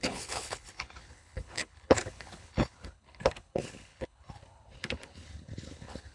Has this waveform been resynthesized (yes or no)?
yes